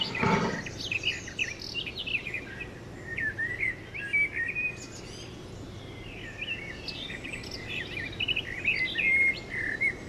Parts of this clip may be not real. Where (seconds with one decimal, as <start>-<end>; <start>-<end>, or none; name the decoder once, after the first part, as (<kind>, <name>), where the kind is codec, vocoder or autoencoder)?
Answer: 3.1-3.7 (vocoder, BigVGAN v2)